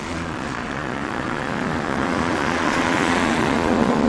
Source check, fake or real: fake